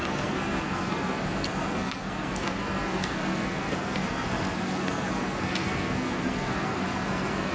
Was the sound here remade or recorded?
remade